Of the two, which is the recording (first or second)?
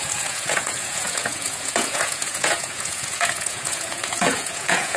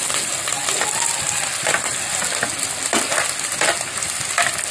second